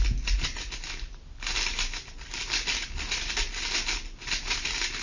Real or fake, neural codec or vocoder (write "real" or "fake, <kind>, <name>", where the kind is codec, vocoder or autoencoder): real